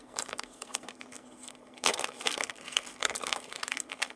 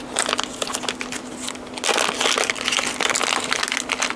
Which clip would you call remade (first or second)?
first